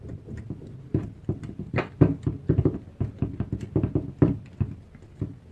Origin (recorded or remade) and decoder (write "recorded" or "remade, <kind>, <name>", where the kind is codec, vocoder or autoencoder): recorded